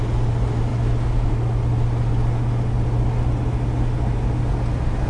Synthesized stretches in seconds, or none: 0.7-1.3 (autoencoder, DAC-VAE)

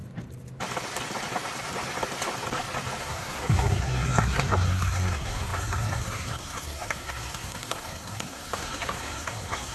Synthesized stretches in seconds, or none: 3.0-9.7 (codec, SNAC)

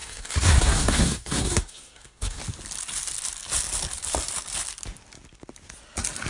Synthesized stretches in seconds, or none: 0.0-2.4 (codec, SNAC)

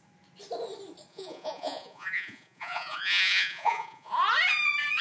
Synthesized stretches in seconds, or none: 1.1-4.1 (vocoder, Vocos)

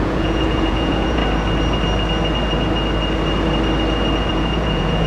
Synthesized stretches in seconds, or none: 0.0-1.2 (vocoder, Vocos); 4.3-5.1

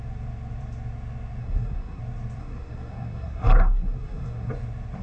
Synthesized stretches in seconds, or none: 1.4-2.0 (codec, SNAC); 2.4-4.5